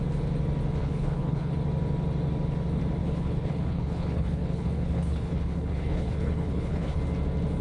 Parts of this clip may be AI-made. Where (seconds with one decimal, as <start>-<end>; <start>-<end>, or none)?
0.8-1.5; 3.0-7.0